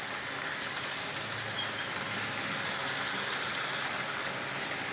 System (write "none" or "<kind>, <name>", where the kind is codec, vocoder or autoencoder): none